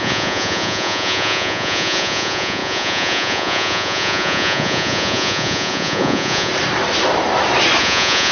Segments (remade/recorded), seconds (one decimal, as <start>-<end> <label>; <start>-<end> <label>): 0.0-6.5 remade; 6.5-7.8 recorded; 7.8-8.3 remade